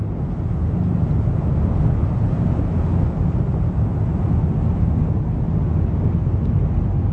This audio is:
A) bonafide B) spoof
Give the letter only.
A